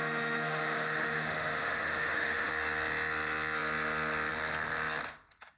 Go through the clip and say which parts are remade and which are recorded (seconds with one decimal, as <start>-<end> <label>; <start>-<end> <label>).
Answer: 0.0-2.5 remade; 2.5-5.6 recorded